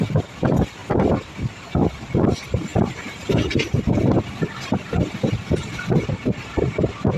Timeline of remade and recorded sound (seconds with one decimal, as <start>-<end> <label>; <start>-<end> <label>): 0.0-0.8 recorded; 0.8-1.7 remade; 1.7-2.7 recorded; 2.7-4.2 remade; 4.2-7.2 recorded